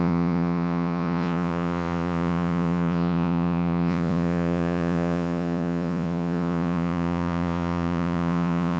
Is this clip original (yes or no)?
no